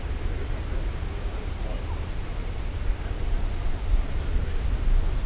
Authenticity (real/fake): fake